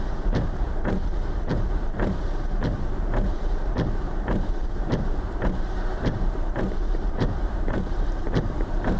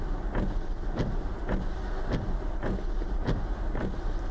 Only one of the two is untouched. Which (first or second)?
second